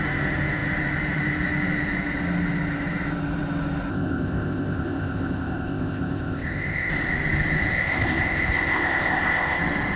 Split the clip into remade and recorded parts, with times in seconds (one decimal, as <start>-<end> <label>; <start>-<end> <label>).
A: 0.0-3.9 recorded; 3.9-6.9 remade; 6.9-7.7 recorded; 7.7-9.6 remade; 9.6-10.0 recorded